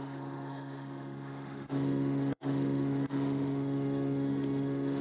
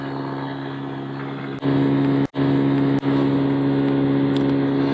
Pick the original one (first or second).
second